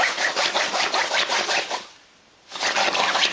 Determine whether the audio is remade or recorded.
recorded